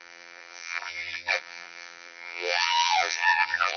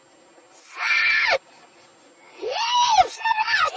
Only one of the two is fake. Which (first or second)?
first